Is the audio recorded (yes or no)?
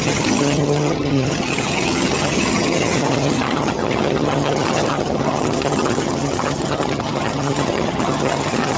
no